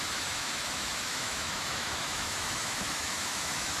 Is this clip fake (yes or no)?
yes